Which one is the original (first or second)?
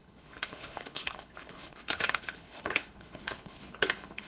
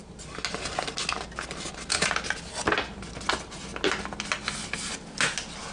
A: second